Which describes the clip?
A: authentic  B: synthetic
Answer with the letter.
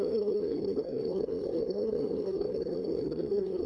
B